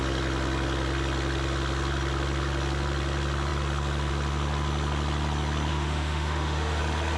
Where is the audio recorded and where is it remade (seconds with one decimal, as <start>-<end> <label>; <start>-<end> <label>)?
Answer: 0.0-5.7 recorded; 5.7-6.8 remade; 6.8-7.2 recorded